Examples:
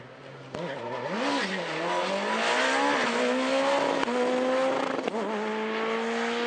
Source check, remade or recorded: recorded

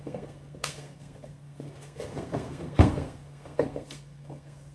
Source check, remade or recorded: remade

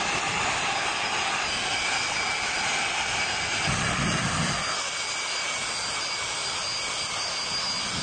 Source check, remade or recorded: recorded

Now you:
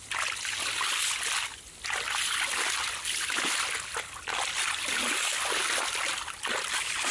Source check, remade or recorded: recorded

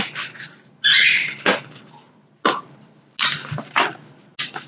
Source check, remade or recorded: recorded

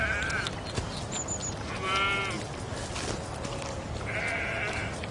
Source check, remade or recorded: recorded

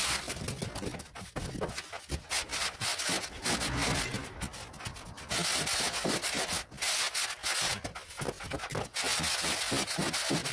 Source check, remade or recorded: recorded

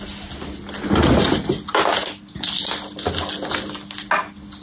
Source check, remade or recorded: recorded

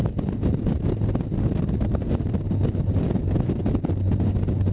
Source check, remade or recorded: recorded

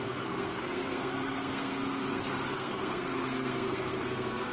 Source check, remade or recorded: remade